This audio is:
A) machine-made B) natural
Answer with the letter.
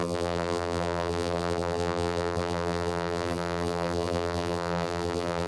A